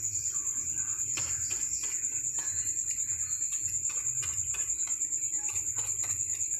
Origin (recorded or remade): recorded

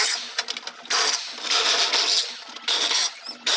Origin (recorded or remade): recorded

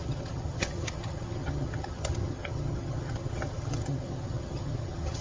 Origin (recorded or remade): remade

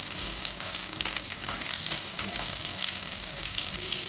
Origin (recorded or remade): remade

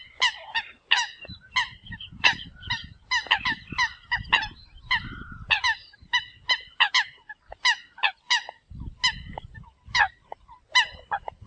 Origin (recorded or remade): recorded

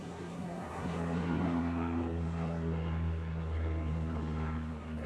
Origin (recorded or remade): remade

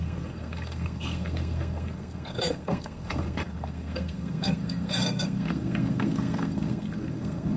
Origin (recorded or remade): remade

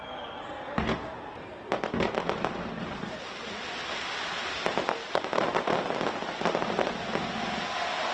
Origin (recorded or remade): recorded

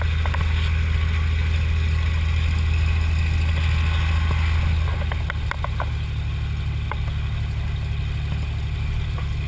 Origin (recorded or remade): recorded